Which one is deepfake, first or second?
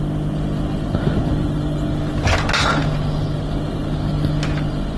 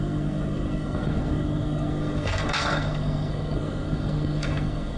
second